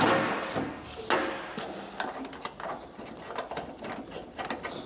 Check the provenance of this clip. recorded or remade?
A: recorded